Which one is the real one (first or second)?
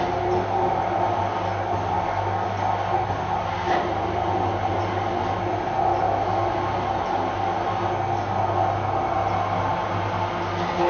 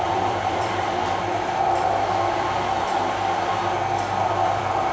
first